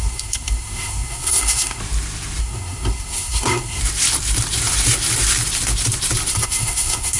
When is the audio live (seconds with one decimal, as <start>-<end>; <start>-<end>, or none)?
1.8-2.4; 3.8-6.3